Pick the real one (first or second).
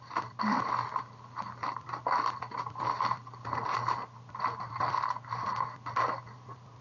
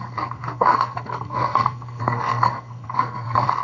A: first